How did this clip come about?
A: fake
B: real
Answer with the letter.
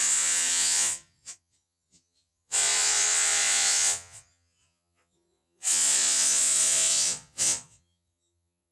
A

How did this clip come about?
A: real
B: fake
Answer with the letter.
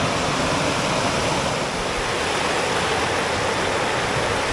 A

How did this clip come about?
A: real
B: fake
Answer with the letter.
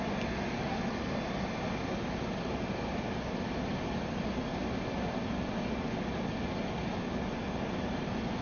A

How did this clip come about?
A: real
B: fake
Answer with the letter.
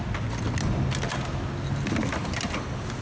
A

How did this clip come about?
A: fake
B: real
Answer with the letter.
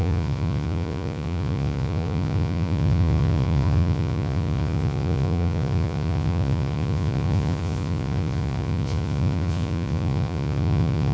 A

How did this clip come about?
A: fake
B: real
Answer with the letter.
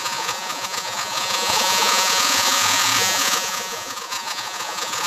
A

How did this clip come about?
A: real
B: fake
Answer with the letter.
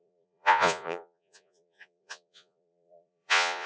B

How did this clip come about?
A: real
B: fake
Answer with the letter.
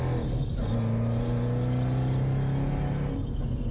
A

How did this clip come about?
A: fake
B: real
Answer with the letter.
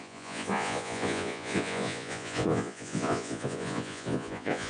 A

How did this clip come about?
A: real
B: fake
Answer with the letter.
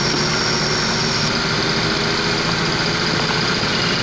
A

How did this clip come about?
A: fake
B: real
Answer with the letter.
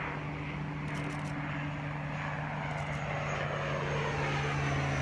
B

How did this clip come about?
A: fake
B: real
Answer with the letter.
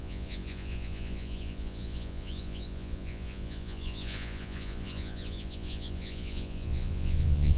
A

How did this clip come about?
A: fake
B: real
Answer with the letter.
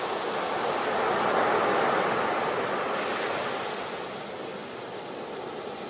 B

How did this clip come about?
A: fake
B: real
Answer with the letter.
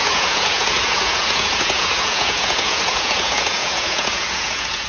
A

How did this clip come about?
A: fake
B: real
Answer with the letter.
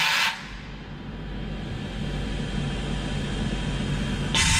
B